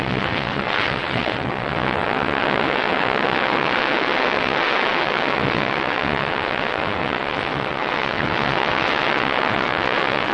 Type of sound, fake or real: fake